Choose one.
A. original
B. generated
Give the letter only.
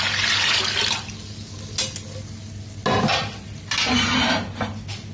A